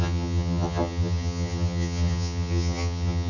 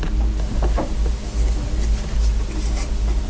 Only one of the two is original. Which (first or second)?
second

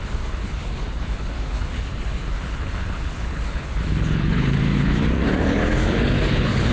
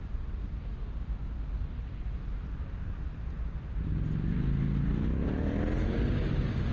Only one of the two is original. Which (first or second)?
second